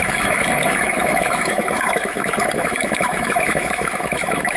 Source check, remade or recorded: remade